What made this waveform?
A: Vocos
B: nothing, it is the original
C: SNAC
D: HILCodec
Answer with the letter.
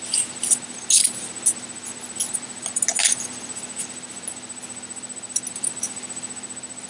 B